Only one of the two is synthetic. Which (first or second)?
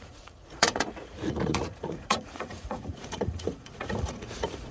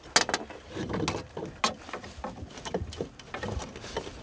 first